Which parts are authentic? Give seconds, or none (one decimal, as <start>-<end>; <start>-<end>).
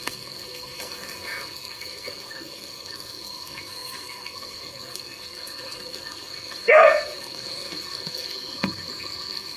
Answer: none